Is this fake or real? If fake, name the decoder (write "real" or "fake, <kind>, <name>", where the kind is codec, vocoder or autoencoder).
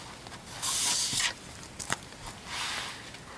real